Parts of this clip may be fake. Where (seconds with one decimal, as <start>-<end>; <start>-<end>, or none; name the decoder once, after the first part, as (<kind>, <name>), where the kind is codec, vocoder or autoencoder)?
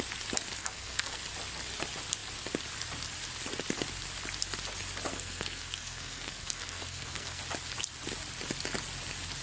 0.6-1.2 (codec, SNAC); 5.1-7.4